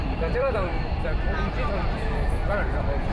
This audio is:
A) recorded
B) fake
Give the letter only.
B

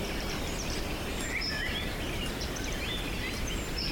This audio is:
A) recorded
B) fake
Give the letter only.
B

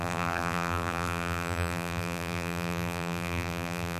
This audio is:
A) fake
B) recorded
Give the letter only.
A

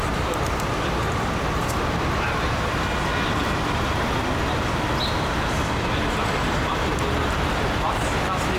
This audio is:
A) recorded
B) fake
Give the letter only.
A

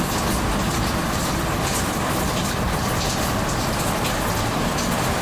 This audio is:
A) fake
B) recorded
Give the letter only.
B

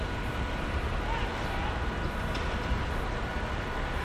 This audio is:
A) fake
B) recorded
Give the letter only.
A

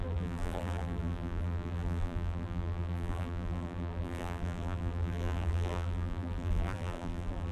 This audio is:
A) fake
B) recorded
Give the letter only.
A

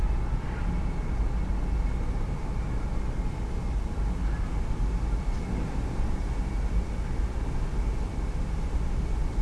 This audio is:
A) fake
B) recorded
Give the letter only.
B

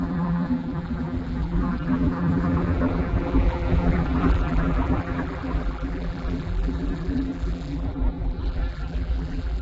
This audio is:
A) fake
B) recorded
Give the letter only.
A